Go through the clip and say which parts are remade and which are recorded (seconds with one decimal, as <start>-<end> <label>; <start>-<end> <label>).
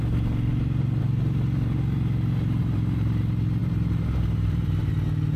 0.0-2.6 recorded; 2.6-3.2 remade; 3.2-3.6 recorded; 3.6-4.9 remade; 4.9-5.4 recorded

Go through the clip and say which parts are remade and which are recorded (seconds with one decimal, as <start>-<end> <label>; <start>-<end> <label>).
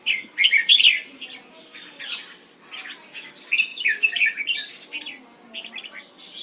0.0-1.7 recorded; 1.7-2.6 remade; 2.6-6.4 recorded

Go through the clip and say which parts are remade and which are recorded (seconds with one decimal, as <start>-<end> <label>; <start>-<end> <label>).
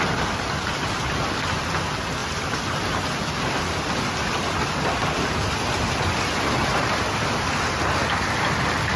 0.0-9.0 recorded